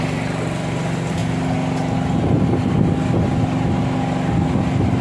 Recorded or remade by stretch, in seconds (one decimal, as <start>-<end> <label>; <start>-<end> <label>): 0.0-5.0 recorded